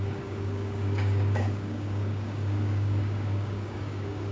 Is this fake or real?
fake